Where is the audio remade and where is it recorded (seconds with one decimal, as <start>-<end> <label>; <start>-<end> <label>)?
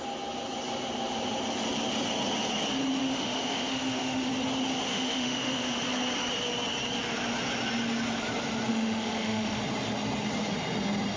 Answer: 0.0-3.0 recorded; 3.0-4.3 remade; 4.3-4.9 recorded; 4.9-5.8 remade; 5.8-8.7 recorded; 8.7-9.6 remade; 9.6-11.2 recorded